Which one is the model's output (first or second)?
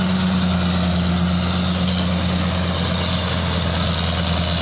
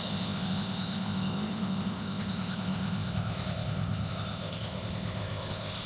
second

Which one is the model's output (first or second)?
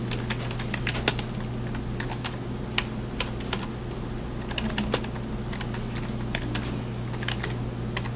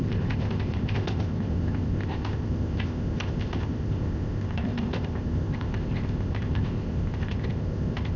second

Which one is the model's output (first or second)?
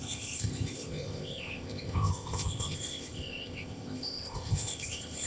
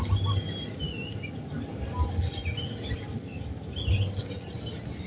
first